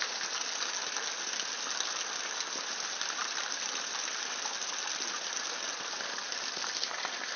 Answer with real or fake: real